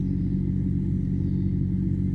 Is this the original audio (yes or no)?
yes